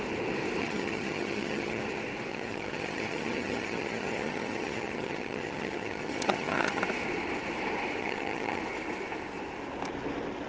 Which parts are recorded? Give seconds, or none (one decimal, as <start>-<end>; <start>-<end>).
0.0-0.6; 1.8-2.3; 6.8-8.0; 8.6-10.5

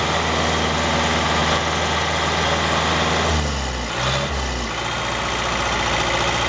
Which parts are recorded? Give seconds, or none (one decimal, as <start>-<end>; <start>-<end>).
0.0-6.5

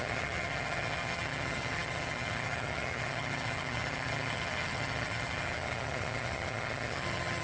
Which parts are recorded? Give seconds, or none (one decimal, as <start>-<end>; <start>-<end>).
none

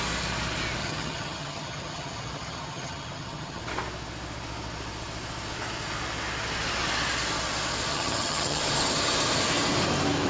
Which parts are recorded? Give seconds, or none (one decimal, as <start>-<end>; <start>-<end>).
0.0-0.8; 3.6-7.9; 8.6-10.3

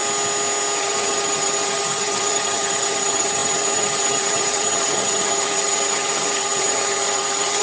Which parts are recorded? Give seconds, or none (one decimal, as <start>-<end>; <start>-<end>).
0.0-0.8

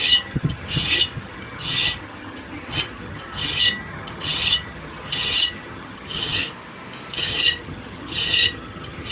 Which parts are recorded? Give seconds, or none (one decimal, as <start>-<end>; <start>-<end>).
6.4-7.1

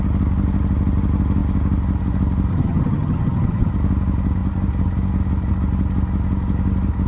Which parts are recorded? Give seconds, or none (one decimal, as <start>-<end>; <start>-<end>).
0.0-2.5; 3.7-7.1